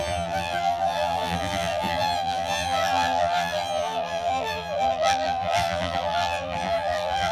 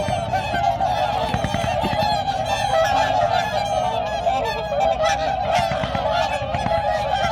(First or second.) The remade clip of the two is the first